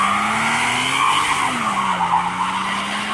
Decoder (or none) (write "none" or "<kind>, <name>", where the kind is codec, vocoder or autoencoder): none